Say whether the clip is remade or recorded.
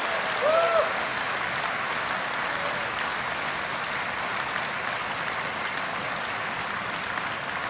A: recorded